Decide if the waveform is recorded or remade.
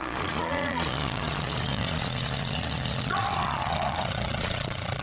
remade